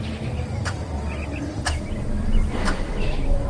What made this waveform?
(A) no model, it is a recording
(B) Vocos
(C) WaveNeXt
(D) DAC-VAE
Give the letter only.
A